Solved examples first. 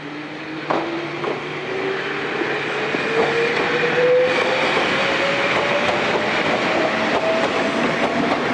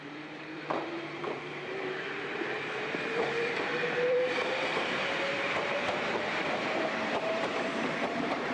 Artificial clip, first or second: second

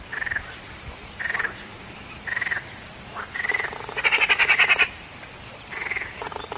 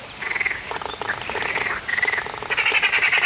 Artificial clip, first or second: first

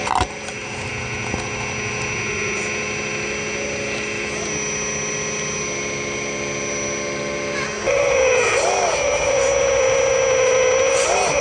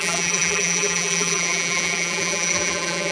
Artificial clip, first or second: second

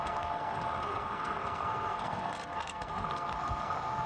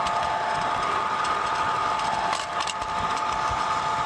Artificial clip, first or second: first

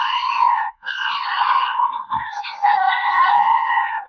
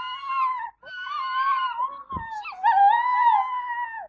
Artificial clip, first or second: first